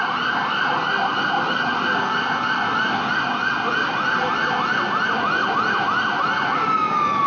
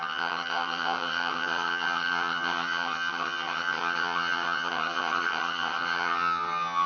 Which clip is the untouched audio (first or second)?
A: first